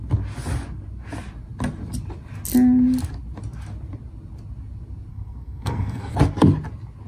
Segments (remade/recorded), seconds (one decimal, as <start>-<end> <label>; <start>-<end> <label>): 0.0-5.1 recorded; 5.1-6.1 remade; 6.1-7.1 recorded